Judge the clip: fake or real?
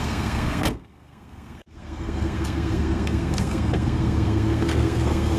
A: fake